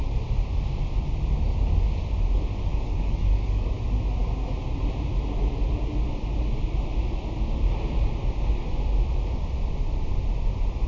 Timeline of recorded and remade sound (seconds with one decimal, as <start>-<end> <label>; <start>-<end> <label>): 0.0-2.7 recorded; 2.7-3.7 remade; 3.7-10.9 recorded